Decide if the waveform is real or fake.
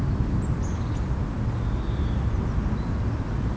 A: real